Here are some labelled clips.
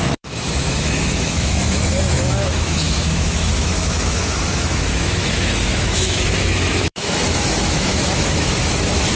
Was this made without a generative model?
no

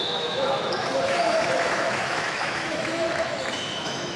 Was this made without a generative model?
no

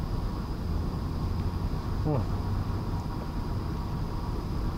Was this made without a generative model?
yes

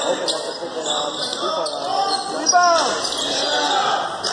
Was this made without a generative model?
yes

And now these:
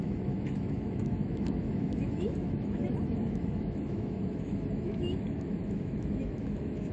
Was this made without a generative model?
no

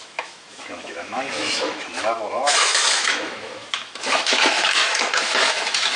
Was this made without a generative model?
no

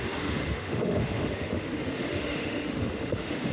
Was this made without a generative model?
no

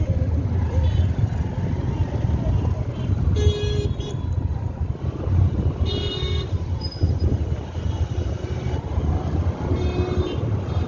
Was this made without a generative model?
yes